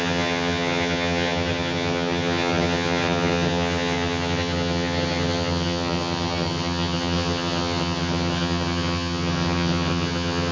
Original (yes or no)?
no